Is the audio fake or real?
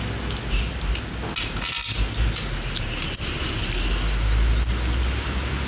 real